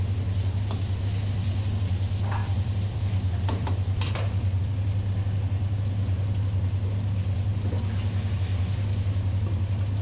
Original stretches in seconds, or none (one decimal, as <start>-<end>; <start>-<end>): 0.0-2.4; 4.6-10.0